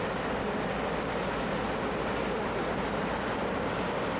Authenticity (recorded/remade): recorded